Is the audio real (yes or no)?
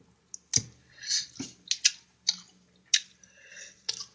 yes